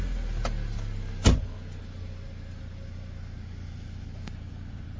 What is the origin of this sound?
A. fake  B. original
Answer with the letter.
B